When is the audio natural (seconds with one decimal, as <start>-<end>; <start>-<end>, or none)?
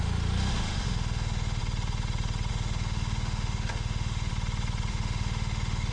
1.6-2.5; 4.3-4.9